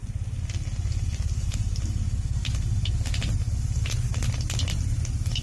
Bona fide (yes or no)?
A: yes